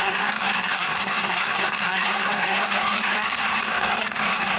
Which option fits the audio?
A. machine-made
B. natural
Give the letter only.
A